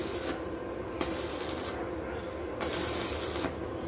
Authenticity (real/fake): real